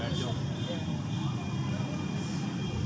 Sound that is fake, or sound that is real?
real